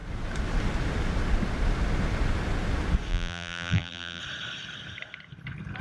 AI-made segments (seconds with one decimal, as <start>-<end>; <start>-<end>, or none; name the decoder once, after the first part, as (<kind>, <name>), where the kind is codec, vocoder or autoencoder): 3.1-4.2 (vocoder, BigVGAN v2)